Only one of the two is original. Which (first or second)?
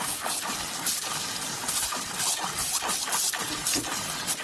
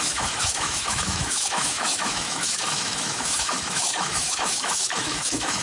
first